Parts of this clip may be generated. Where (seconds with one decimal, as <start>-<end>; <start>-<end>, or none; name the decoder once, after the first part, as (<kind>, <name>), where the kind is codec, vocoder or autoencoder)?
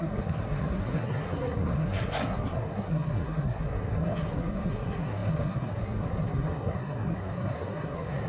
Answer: 0.0-8.3 (codec, SNAC)